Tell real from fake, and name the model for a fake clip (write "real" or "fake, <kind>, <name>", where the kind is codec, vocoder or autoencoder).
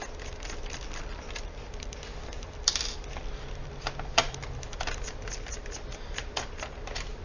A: fake, vocoder, BigVGAN v2